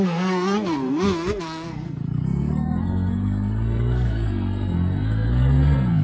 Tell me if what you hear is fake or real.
fake